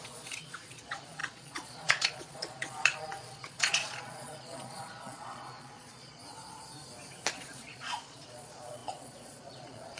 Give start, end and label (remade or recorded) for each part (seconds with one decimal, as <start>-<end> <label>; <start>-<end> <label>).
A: 0.0-6.2 remade; 6.2-7.3 recorded; 7.3-10.0 remade